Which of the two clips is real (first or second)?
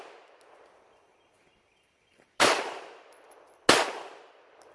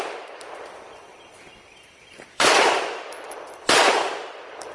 first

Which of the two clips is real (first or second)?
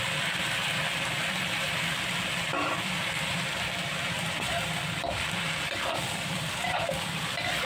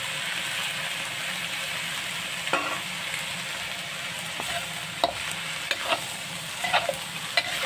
second